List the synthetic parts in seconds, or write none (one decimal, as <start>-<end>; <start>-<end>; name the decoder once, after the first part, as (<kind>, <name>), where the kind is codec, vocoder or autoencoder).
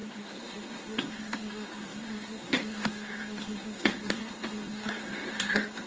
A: 0.0-5.9 (codec, SNAC)